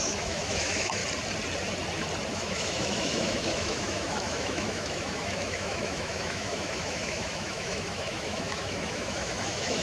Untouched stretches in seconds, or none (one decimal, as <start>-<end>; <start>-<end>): 1.0-2.3